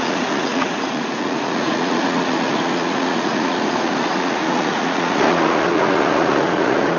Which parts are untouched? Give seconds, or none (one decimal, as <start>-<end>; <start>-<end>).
none